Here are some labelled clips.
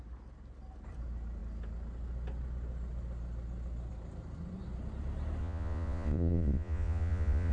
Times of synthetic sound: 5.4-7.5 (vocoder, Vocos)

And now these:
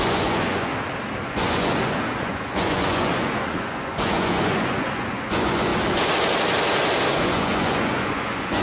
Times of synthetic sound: 0.0-0.7 (vocoder, Vocos); 1.2-5.7; 7.1-8.6

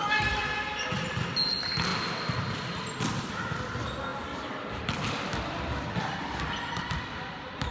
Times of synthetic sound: none

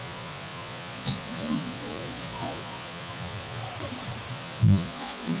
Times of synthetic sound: 0.0-3.6 (vocoder, Vocos); 4.3-5.4

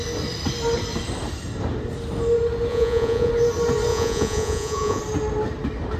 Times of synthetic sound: 2.7-3.3 (vocoder, Vocos); 3.9-5.0

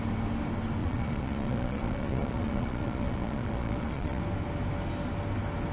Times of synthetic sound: 0.8-4.2 (vocoder, Vocos)

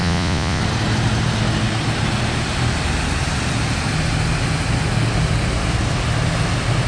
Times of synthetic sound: 0.0-0.6 (vocoder, Vocos)